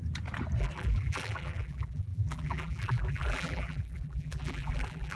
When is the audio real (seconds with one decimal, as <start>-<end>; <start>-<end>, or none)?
0.0-0.6